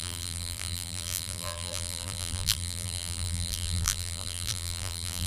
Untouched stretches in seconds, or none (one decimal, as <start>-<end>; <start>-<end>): none